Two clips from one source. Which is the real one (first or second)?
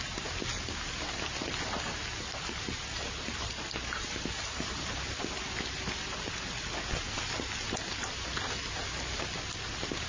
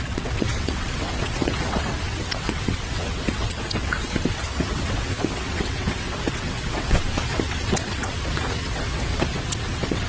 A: first